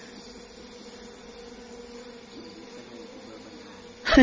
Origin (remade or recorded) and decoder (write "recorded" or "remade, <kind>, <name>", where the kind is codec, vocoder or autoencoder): recorded